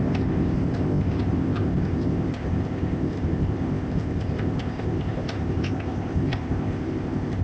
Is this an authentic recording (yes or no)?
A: no